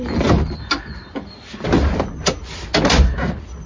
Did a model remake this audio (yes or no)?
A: no